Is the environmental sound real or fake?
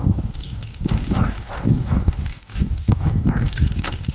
fake